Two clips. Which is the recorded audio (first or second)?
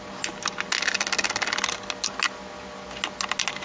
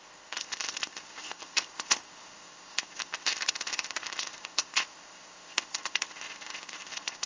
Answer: first